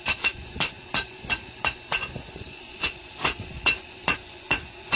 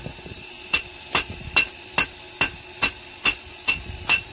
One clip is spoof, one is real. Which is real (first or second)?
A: second